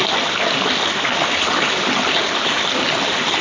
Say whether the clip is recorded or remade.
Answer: recorded